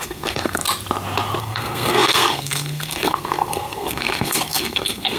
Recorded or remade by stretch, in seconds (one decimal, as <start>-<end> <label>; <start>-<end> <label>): 0.0-0.6 remade; 0.6-1.4 recorded; 1.4-5.2 remade